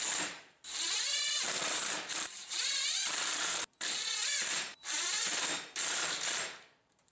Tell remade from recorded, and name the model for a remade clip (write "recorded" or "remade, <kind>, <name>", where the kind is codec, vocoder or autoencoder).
remade, vocoder, BigVGAN v2